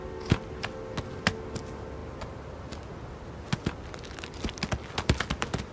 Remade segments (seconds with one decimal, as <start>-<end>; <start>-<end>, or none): none